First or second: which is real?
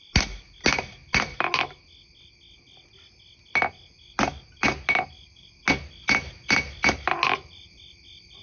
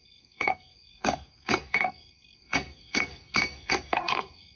first